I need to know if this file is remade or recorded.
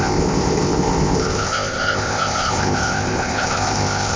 remade